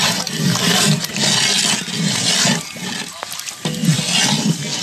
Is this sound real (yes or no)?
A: yes